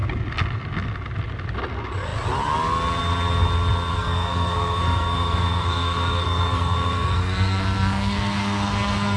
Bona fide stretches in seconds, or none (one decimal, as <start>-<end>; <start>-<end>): 0.0-3.9